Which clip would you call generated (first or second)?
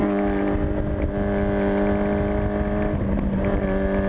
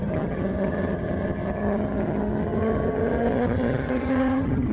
second